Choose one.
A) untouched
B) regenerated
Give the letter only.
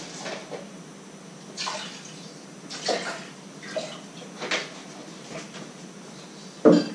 A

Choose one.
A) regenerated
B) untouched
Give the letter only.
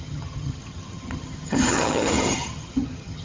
A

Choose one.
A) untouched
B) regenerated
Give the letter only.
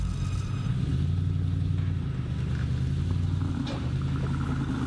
A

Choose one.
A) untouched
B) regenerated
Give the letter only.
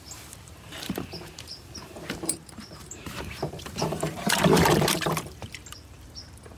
B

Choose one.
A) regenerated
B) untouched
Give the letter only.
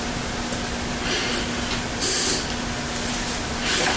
B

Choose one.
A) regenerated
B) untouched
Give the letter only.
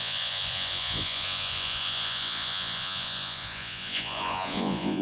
A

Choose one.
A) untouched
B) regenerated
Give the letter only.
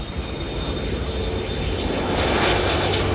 A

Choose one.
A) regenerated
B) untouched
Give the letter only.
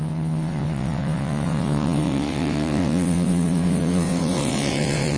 A